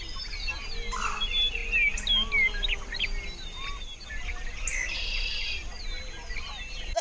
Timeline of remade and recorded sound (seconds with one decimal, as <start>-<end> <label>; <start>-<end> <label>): 0.0-7.0 recorded